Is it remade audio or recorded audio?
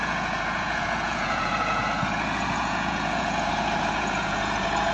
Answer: remade